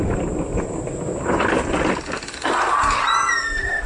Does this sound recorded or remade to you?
recorded